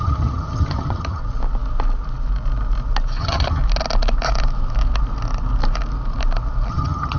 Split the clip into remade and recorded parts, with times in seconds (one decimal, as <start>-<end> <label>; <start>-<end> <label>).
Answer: 0.0-1.2 remade; 1.2-3.2 recorded; 3.2-3.6 remade; 3.6-6.7 recorded; 6.7-7.2 remade